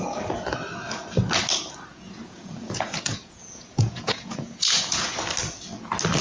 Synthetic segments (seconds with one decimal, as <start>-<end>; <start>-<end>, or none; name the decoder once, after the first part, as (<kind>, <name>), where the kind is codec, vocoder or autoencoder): 1.9-5.1 (vocoder, Vocos)